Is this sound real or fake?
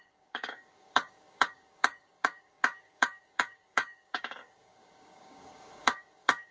fake